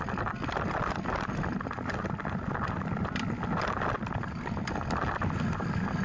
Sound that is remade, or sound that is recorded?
recorded